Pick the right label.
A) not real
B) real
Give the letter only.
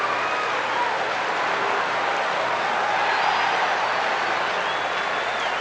B